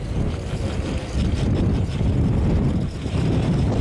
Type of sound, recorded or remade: recorded